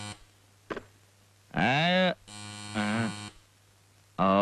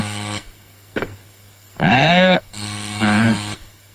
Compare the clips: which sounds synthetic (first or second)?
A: second